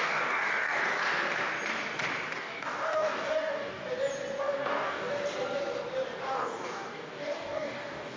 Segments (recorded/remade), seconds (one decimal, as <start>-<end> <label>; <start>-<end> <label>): 0.0-0.8 remade; 0.8-2.4 recorded; 2.4-3.8 remade; 3.8-4.4 recorded; 4.4-5.2 remade; 5.2-6.2 recorded; 6.2-8.2 remade